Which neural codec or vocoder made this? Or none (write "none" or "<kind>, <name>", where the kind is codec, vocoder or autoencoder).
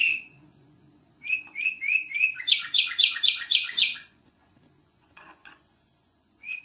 vocoder, Vocos